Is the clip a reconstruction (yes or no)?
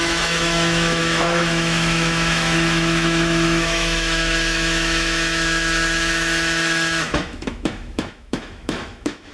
yes